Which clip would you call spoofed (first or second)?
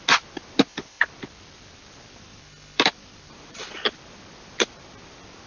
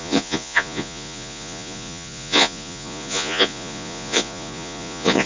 second